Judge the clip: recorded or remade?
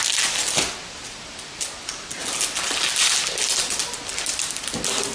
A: recorded